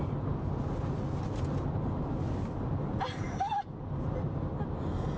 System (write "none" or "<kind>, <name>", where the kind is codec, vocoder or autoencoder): none